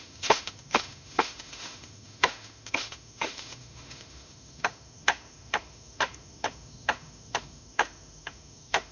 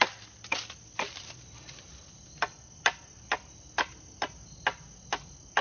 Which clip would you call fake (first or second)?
first